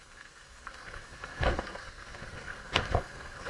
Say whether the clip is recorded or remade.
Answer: remade